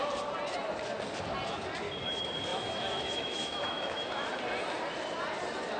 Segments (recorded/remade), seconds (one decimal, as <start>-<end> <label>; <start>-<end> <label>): 0.0-2.5 recorded; 2.5-4.3 remade; 4.3-5.8 recorded

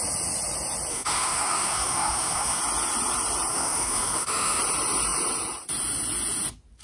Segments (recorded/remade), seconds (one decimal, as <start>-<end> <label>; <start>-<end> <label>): 0.0-0.9 recorded; 0.9-2.6 remade; 2.6-3.5 recorded; 3.5-4.6 remade; 4.6-6.8 recorded

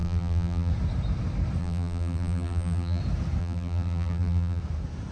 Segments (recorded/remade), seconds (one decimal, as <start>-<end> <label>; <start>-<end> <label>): 0.0-0.7 remade; 0.7-1.6 recorded; 1.6-3.0 remade; 3.0-3.4 recorded; 3.4-4.6 remade; 4.6-5.1 recorded

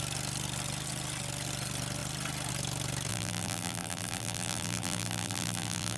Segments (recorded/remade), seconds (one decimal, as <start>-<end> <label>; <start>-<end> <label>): 0.0-3.1 recorded; 3.1-6.0 remade